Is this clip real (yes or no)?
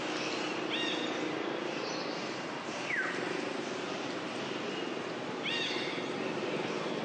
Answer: yes